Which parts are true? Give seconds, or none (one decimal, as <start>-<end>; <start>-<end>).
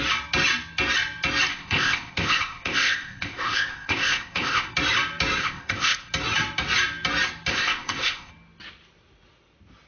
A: 0.0-1.5; 4.7-5.4; 6.1-7.5; 8.3-9.9